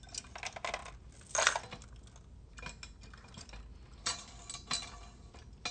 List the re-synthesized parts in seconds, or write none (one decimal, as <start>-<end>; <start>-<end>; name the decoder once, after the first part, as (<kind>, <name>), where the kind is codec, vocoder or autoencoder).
none